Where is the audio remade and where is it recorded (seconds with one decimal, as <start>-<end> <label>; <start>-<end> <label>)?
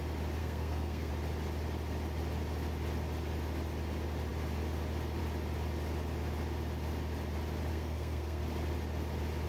0.0-0.4 recorded; 0.4-1.1 remade; 1.1-7.7 recorded; 7.7-8.4 remade; 8.4-9.5 recorded